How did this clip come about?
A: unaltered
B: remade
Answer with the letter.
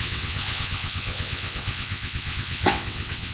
B